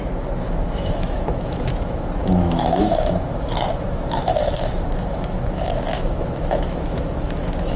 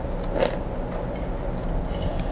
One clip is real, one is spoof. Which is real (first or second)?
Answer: second